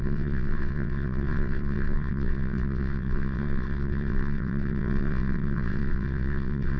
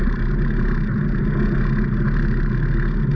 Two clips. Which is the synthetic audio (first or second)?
first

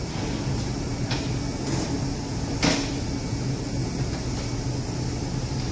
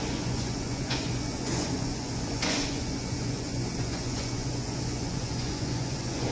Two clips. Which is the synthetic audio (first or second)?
second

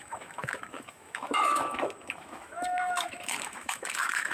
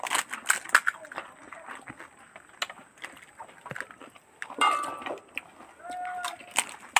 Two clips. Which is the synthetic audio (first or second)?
first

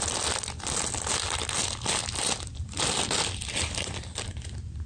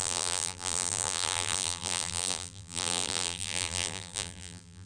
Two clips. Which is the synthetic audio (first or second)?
second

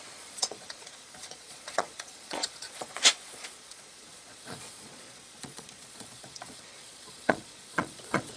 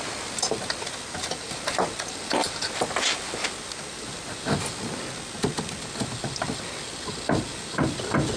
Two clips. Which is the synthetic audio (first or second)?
first